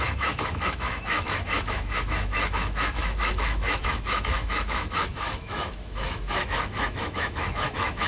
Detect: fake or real fake